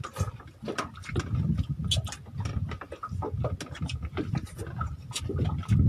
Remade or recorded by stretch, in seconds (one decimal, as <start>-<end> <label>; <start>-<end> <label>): 0.0-5.9 recorded